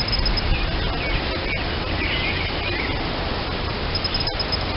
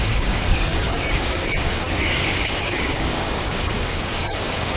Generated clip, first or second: second